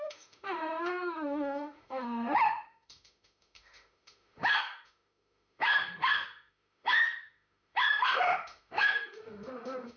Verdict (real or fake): fake